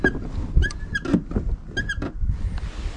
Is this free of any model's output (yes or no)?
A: yes